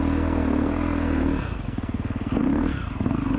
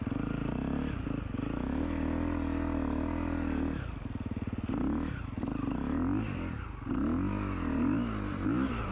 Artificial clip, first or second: first